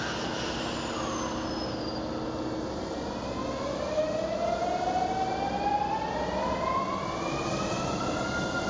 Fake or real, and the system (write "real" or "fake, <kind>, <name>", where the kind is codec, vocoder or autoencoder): real